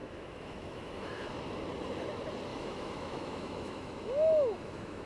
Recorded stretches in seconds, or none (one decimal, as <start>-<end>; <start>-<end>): 1.3-2.5